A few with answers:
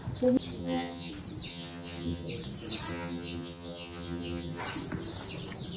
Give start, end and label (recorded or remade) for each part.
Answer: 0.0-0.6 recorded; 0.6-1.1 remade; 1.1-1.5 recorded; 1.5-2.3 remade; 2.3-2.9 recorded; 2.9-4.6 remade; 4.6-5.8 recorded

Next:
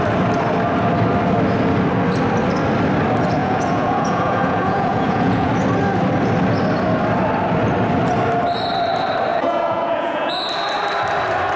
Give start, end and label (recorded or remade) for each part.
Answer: 0.0-3.4 recorded; 3.4-5.5 remade; 5.5-9.3 recorded; 9.3-10.3 remade; 10.3-11.6 recorded

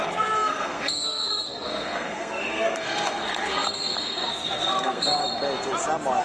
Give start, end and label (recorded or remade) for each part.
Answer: 0.0-5.2 remade; 5.2-6.2 recorded

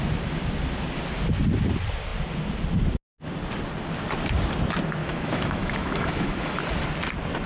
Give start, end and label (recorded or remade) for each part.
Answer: 0.0-5.0 recorded; 5.0-6.6 remade; 6.6-7.5 recorded

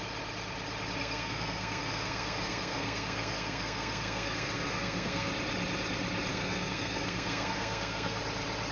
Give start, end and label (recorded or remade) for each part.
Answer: 0.0-1.0 recorded; 1.0-5.3 remade; 5.3-6.3 recorded; 6.3-8.2 remade; 8.2-8.7 recorded

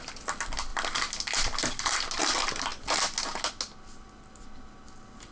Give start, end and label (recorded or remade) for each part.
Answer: 0.0-5.3 recorded